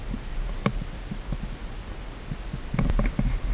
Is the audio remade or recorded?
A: recorded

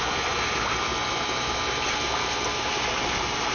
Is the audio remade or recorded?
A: recorded